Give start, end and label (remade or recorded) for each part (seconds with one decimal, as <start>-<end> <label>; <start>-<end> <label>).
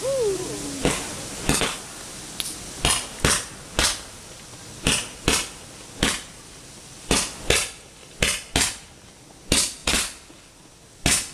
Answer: 0.0-9.8 recorded; 9.8-10.6 remade; 10.6-11.3 recorded